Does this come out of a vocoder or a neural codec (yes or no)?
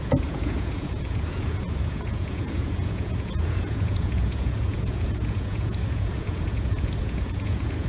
yes